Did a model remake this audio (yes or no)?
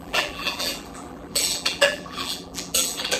yes